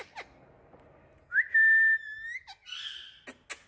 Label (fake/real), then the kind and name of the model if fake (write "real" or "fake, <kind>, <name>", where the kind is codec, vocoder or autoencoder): real